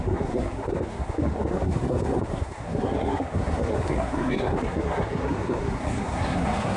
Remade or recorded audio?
remade